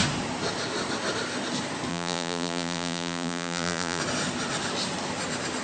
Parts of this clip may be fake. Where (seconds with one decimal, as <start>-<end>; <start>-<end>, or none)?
1.9-4.0